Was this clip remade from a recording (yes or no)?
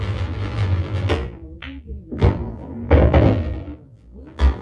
yes